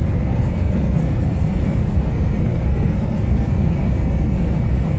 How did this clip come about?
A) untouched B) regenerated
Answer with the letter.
B